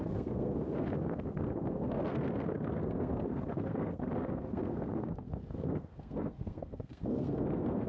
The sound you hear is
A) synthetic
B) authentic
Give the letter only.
A